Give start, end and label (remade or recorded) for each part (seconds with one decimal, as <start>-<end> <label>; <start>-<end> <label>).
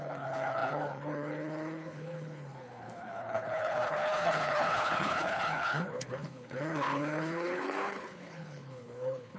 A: 0.0-9.4 remade